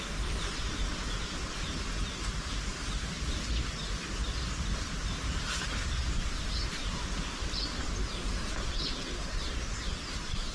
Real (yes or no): yes